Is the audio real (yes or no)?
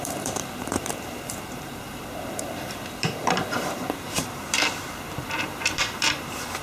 no